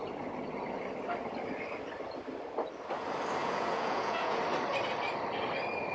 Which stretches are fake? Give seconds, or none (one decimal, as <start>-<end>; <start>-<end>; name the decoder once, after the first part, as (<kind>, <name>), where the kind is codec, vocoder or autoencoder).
3.4-4.4 (vocoder, Vocos)